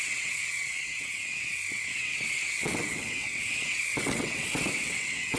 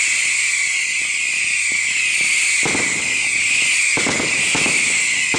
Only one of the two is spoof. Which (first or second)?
first